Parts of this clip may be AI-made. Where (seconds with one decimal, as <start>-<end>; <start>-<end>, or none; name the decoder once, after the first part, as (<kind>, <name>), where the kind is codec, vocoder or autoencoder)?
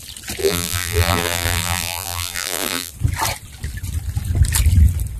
0.4-2.9 (vocoder, BigVGAN v2)